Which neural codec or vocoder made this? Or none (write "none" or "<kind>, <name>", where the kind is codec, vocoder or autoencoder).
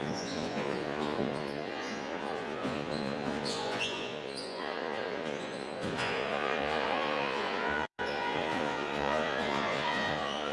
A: vocoder, Vocos